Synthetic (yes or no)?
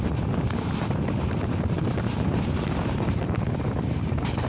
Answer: yes